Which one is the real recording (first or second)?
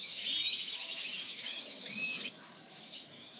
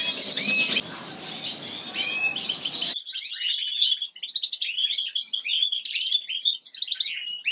second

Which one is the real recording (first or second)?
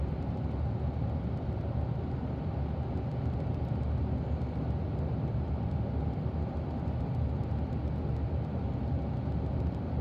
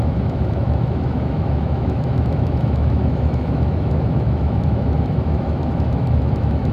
first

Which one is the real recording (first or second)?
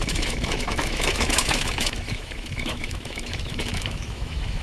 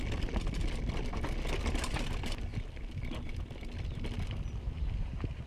second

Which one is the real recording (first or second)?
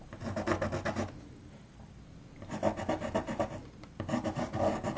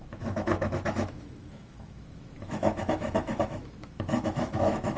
first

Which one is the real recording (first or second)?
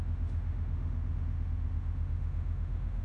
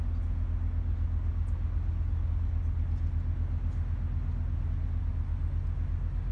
second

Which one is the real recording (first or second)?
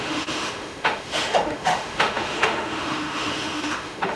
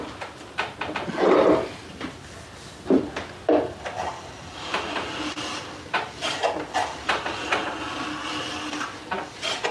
second